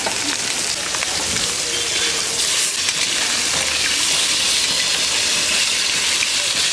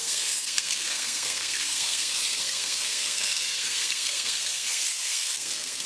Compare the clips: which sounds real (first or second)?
first